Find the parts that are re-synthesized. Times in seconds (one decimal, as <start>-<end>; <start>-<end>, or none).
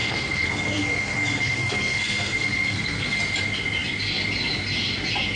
0.0-3.2